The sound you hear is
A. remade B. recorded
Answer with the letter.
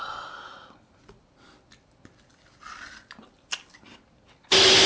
B